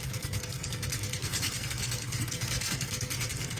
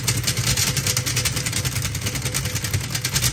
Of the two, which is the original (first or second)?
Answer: second